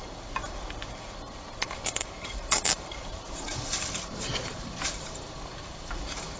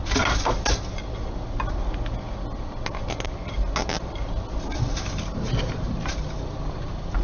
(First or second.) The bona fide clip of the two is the second